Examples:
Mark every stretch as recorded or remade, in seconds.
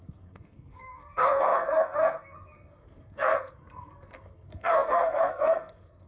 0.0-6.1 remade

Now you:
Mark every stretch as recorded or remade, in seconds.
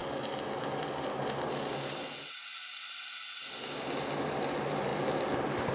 0.0-5.7 recorded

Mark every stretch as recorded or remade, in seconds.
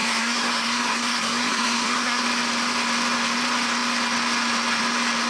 0.0-2.2 remade; 2.2-5.3 recorded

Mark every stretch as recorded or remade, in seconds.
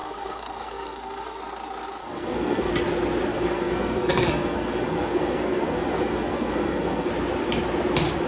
0.0-1.4 remade; 1.4-2.0 recorded; 2.0-2.7 remade; 2.7-3.3 recorded; 3.3-7.1 remade; 7.1-8.3 recorded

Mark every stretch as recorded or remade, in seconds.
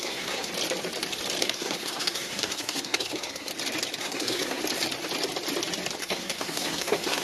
0.0-0.5 remade; 0.5-1.4 recorded; 1.4-3.5 remade; 3.5-4.0 recorded; 4.0-4.6 remade; 4.6-6.0 recorded; 6.0-7.2 remade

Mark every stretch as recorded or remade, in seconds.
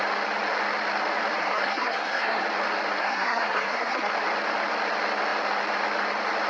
0.0-1.4 recorded; 1.4-2.4 remade; 2.4-3.0 recorded; 3.0-4.1 remade; 4.1-6.5 recorded